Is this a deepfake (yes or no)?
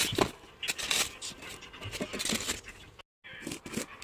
no